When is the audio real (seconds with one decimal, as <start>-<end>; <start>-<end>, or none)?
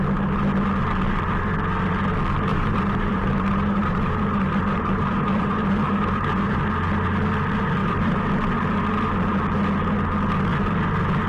0.0-2.5; 6.6-7.8; 8.3-11.3